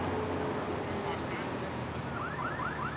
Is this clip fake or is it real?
real